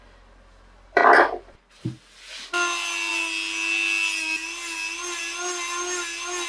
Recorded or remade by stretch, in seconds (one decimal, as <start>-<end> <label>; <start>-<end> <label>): 0.0-6.5 recorded